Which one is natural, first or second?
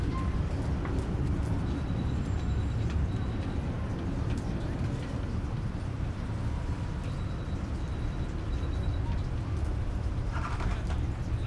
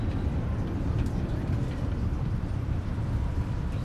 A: first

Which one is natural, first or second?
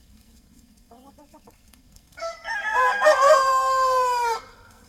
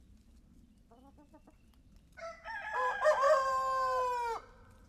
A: second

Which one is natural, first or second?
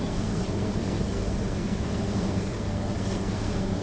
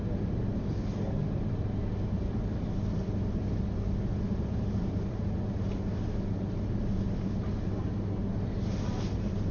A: second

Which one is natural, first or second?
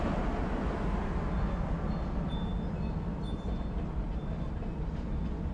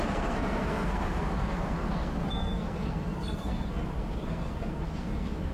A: first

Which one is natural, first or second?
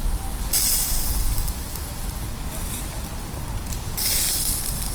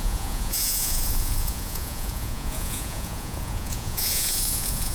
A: first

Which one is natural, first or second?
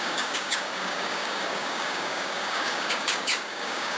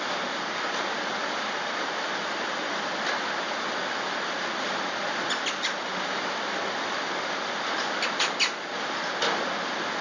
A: second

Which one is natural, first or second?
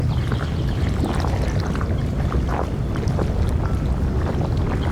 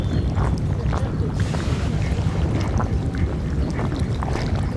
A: first